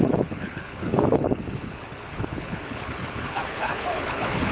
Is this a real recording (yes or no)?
no